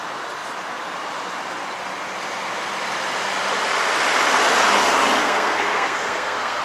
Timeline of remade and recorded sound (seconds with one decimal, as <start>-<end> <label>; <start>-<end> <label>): 0.0-5.2 recorded; 5.2-6.6 remade